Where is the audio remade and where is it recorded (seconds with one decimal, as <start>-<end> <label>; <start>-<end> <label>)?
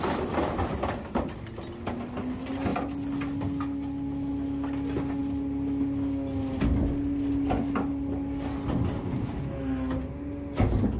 0.0-11.0 recorded